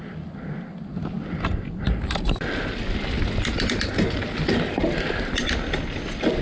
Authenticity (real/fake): real